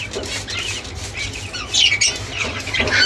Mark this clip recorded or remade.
recorded